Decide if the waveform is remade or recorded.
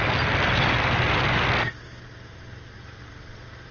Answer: recorded